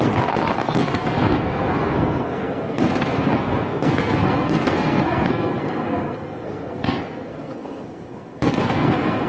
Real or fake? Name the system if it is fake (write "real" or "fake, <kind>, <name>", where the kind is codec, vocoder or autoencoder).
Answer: fake, codec, SNAC